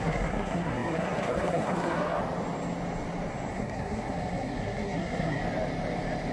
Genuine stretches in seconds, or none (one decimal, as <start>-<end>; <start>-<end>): 2.2-3.5; 5.4-6.3